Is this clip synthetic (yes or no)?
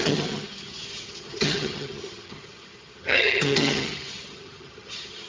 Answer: yes